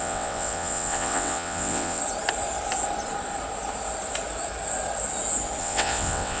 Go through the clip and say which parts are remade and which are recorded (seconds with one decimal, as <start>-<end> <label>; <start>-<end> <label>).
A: 0.0-2.0 remade; 2.0-5.6 recorded; 5.6-6.4 remade